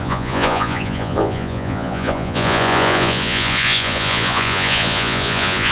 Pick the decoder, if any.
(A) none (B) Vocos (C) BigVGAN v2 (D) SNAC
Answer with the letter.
B